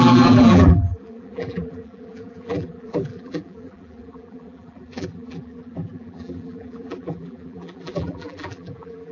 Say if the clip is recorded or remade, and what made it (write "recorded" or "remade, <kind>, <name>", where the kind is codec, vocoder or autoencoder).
remade, vocoder, BigVGAN v2